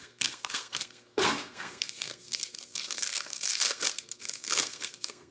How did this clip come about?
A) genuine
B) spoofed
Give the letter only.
B